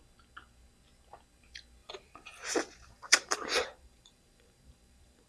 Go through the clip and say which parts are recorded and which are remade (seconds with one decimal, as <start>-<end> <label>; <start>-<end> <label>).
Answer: 0.0-1.8 recorded; 1.8-5.3 remade